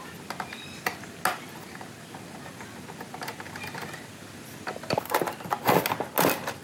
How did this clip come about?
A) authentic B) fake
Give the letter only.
A